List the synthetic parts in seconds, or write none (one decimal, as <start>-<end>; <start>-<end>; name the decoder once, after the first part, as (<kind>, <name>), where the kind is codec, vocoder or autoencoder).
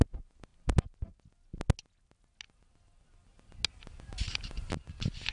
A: none